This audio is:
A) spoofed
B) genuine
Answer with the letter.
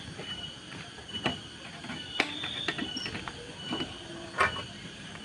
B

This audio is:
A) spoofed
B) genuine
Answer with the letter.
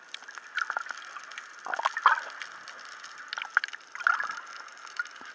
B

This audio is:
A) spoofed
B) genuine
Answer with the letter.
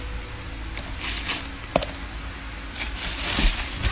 B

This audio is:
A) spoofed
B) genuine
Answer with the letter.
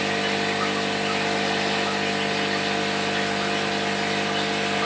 B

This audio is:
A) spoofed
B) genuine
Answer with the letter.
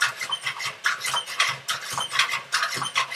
B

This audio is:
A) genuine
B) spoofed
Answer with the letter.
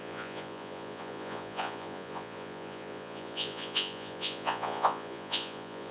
B